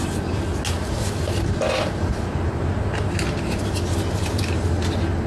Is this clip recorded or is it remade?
recorded